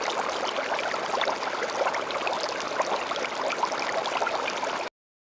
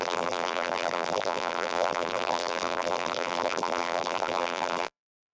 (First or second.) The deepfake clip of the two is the second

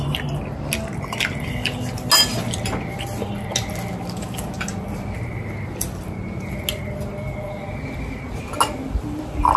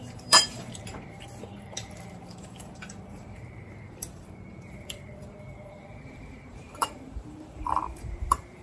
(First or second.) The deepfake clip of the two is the second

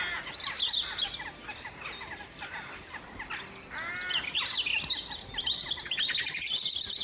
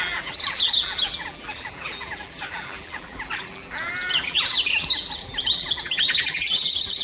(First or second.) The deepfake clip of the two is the second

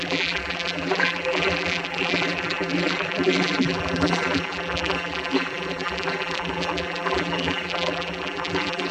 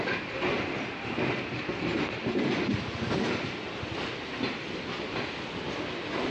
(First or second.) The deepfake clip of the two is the first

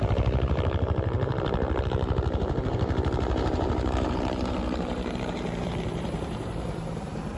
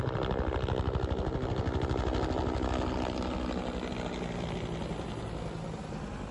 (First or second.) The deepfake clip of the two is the first